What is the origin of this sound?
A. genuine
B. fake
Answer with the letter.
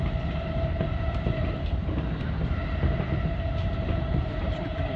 B